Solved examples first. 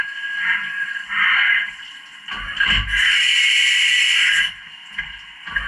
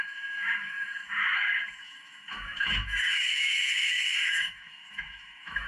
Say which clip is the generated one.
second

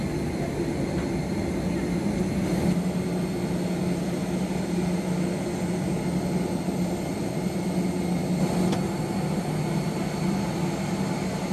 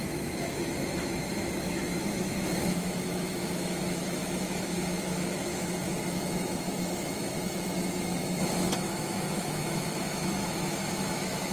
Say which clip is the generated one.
second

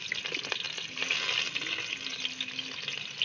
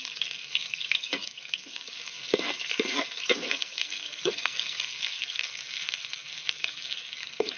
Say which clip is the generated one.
second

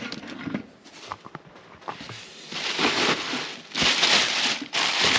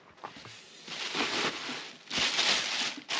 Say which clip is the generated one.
first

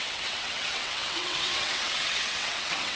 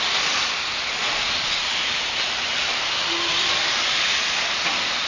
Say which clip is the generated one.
first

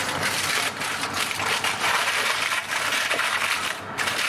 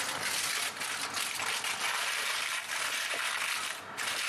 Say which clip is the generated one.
first